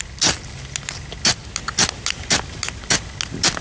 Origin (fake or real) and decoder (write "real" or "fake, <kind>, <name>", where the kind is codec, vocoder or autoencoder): real